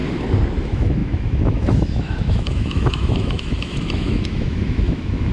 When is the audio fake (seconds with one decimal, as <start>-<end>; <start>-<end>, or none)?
0.6-5.3